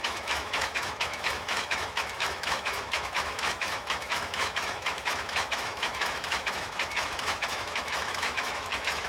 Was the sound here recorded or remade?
remade